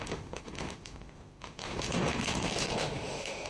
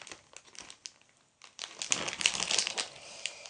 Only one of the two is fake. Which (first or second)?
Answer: first